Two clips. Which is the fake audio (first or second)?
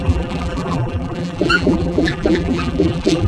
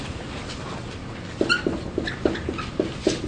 first